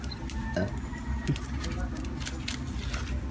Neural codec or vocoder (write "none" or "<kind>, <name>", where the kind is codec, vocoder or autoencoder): none